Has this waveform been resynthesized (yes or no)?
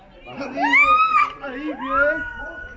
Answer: no